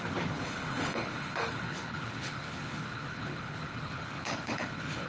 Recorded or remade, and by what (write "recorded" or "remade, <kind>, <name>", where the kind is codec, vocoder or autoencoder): remade, codec, HILCodec